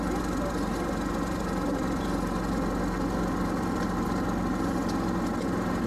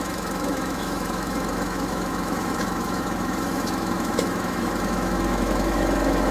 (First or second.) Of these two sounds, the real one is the first